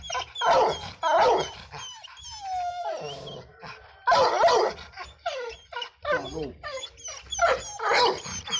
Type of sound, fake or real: real